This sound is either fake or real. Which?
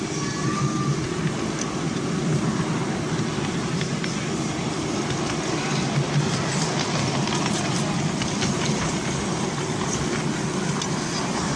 real